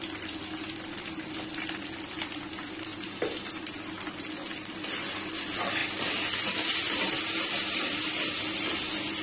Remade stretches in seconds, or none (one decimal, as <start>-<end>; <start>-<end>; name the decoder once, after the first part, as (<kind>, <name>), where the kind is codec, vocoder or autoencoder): none